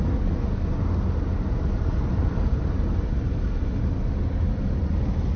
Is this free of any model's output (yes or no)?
yes